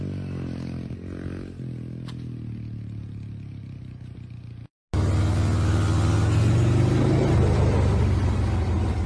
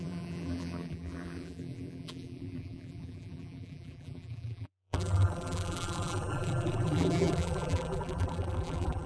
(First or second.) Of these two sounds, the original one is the first